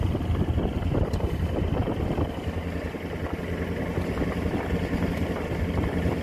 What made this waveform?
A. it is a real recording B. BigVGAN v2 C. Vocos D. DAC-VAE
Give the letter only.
A